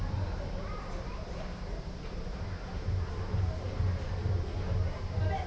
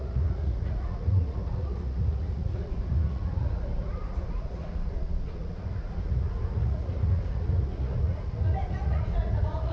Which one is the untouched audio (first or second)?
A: first